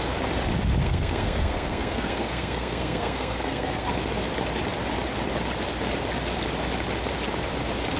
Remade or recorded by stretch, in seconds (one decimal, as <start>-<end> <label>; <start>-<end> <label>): 0.0-0.8 recorded; 0.8-3.9 remade; 3.9-8.0 recorded